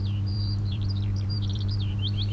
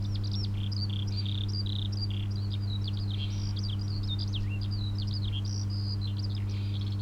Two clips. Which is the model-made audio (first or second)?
first